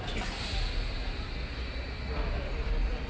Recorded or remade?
recorded